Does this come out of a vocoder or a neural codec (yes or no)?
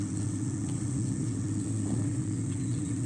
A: yes